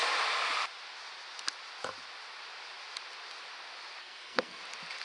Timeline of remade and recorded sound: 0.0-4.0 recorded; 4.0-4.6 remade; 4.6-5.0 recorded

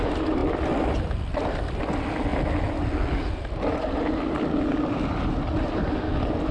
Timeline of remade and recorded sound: 0.0-6.5 recorded